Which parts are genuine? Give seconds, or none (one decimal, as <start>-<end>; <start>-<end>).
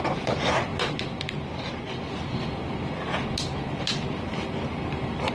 0.0-5.3